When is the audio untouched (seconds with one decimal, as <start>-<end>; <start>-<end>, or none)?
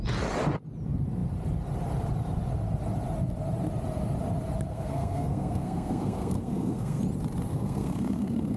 0.0-4.7; 7.0-7.5